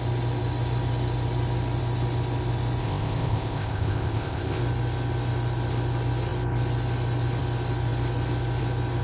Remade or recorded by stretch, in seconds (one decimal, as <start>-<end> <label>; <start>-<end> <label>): 0.0-2.8 recorded; 2.8-4.6 remade; 4.6-9.0 recorded